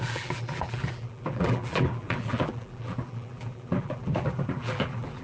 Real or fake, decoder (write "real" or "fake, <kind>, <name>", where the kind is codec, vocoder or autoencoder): fake, vocoder, BigVGAN v2